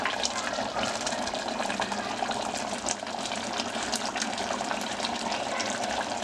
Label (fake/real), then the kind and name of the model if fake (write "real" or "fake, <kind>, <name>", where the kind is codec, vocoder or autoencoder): fake, vocoder, BigVGAN v2